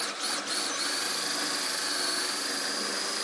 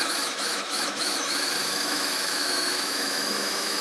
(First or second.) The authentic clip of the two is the first